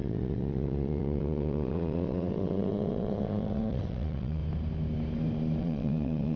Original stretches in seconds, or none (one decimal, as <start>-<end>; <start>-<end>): 4.4-5.6